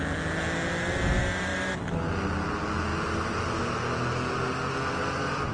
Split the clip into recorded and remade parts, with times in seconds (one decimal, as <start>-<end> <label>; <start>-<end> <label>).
0.0-5.5 recorded